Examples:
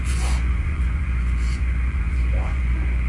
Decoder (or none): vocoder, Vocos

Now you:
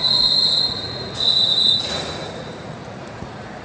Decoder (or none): vocoder, Vocos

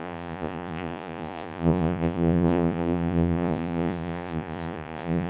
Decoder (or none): vocoder, Vocos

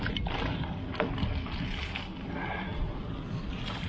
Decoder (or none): none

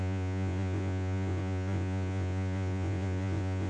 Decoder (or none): vocoder, Vocos